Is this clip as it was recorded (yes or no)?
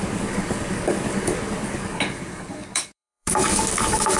no